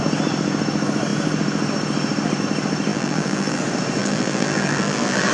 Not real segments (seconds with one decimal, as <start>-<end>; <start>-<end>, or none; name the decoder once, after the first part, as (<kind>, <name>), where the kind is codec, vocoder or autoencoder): 2.9-3.6 (vocoder, BigVGAN v2); 4.0-5.3